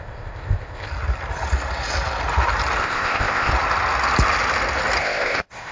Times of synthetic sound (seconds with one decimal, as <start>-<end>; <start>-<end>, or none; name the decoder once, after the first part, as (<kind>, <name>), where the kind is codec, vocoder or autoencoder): 0.0-0.9 (codec, ZipCodec); 2.8-3.5; 5.0-5.7